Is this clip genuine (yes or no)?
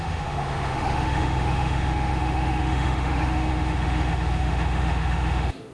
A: no